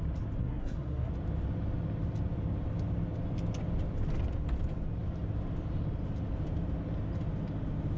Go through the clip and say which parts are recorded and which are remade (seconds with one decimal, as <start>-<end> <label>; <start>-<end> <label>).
0.0-0.4 recorded; 0.4-1.1 remade; 1.1-8.0 recorded